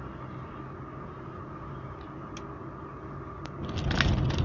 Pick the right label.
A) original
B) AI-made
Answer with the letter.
A